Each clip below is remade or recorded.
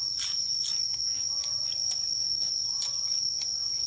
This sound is recorded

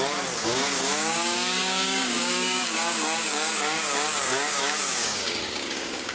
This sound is remade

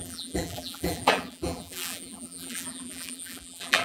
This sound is remade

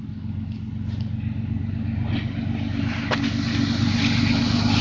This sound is recorded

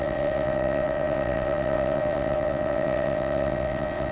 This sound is remade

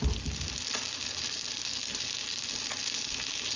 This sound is recorded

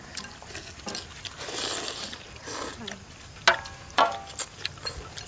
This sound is recorded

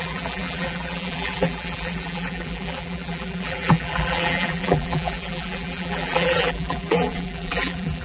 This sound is remade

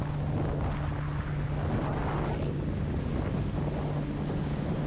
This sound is recorded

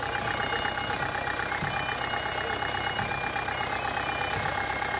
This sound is recorded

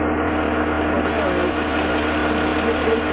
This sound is recorded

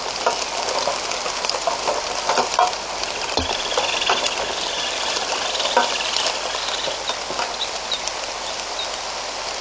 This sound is recorded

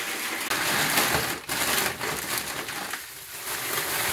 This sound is recorded